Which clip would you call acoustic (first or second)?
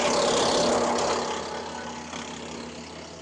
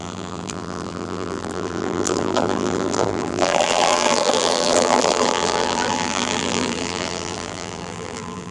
first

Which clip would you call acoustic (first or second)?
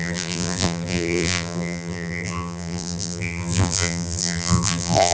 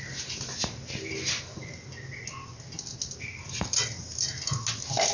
second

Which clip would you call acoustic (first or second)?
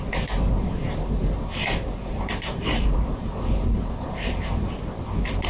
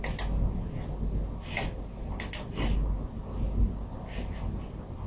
second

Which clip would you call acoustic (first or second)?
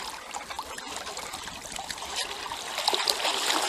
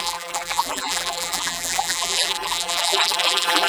first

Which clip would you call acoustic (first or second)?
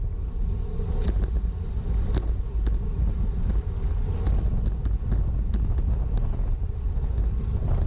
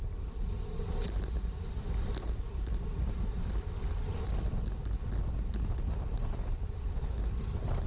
first